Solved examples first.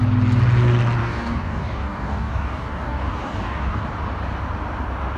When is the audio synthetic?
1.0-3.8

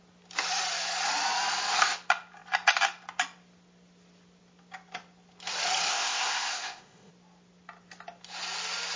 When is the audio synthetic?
5.9-7.1

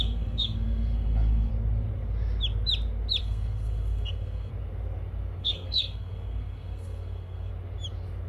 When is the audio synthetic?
0.0-1.5; 3.2-4.5; 5.4-7.5

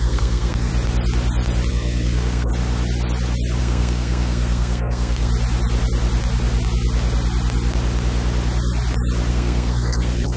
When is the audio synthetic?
0.0-0.7; 1.7-2.5; 3.6-5.3; 9.3-10.4

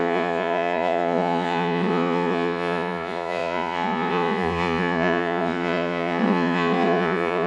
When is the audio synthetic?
0.0-7.5